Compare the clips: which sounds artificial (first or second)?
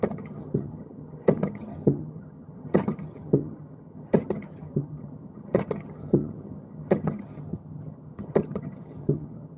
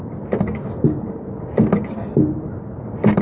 first